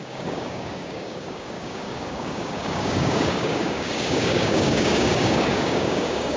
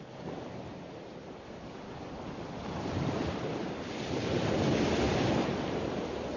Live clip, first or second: second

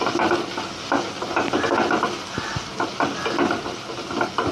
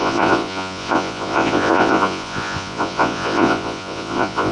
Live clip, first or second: first